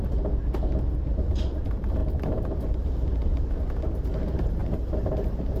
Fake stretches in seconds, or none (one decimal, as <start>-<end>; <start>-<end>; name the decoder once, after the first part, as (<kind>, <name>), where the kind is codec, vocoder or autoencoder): 0.0-0.4 (vocoder, BigVGAN v2); 1.0-5.6